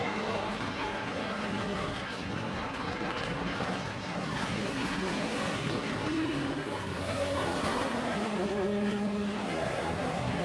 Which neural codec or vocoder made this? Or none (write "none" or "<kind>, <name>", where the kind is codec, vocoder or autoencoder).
codec, SNAC